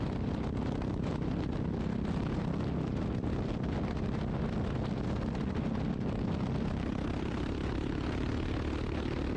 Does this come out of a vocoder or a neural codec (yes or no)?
no